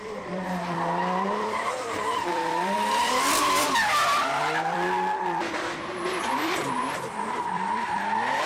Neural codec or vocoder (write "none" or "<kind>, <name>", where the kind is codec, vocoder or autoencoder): vocoder, BigVGAN v2